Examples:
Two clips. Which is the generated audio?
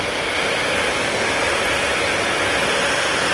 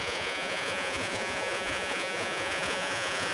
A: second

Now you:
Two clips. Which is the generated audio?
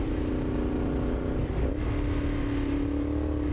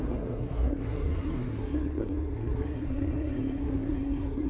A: second